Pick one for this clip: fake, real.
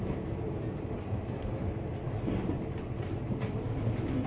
real